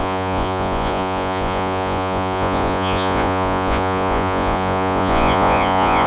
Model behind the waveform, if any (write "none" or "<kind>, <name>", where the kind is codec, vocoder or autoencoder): vocoder, Vocos